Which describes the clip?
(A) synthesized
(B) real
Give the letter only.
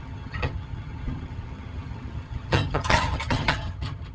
A